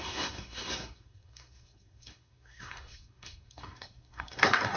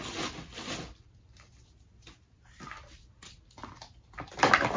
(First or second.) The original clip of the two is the second